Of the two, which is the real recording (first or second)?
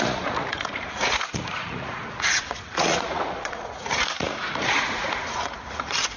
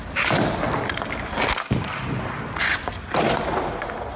second